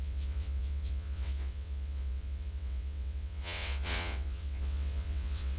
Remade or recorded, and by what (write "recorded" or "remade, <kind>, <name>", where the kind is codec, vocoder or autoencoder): remade, vocoder, WaveNeXt